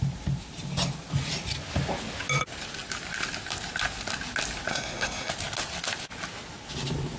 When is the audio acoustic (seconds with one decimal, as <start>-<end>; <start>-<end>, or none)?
0.0-4.7; 5.3-7.2